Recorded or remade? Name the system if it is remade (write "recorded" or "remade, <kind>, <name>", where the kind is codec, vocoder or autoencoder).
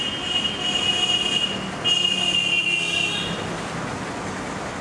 recorded